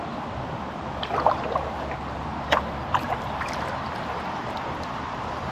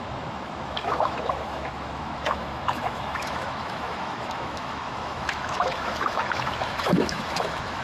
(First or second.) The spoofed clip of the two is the second